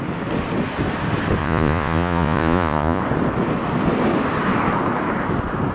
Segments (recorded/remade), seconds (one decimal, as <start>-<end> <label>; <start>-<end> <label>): 0.0-1.4 recorded; 1.4-3.0 remade; 3.0-5.7 recorded